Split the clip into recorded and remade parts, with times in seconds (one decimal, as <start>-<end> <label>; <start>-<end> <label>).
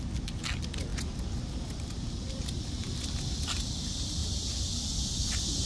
0.0-5.7 recorded